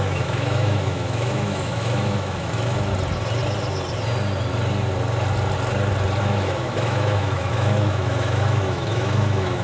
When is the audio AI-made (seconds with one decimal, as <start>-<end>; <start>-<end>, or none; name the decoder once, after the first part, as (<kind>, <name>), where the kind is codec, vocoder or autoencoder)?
0.0-2.9 (autoencoder, DAC-VAE); 6.2-9.6